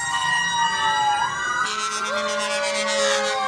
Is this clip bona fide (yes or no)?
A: yes